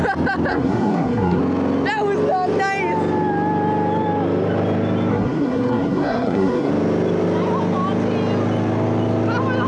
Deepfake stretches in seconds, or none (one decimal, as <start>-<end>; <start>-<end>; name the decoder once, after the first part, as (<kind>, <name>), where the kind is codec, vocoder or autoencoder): 0.5-1.4 (codec, SNAC); 5.1-6.7

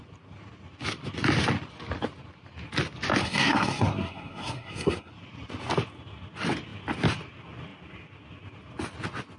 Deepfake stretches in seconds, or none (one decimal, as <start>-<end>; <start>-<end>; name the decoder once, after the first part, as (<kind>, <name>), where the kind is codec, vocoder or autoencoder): 3.2-5.1 (codec, SNAC)

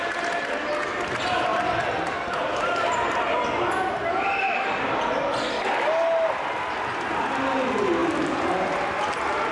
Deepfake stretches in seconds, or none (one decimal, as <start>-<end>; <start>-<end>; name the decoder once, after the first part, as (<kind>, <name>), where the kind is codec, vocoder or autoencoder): none

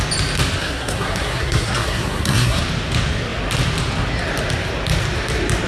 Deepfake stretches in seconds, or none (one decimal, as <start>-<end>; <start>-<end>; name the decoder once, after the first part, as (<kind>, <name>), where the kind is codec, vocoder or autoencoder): 0.6-2.6 (codec, SNAC)